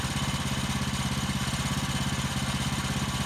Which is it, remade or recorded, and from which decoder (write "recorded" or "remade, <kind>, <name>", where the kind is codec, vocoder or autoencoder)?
recorded